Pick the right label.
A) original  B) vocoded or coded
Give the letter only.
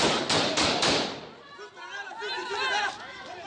A